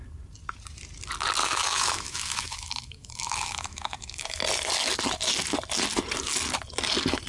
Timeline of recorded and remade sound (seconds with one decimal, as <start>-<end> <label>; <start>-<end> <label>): 0.0-1.4 recorded; 1.4-4.4 remade; 4.4-7.3 recorded